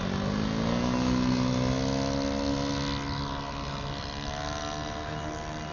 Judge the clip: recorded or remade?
recorded